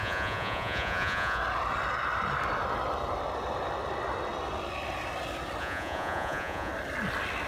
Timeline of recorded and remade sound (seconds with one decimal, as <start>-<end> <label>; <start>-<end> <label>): 0.0-1.4 remade; 1.4-5.6 recorded; 5.6-6.7 remade; 6.7-7.5 recorded